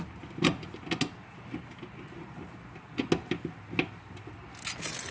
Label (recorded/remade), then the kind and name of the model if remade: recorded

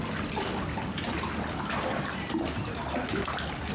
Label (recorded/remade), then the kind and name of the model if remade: recorded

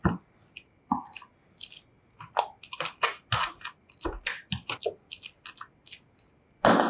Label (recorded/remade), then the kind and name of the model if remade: recorded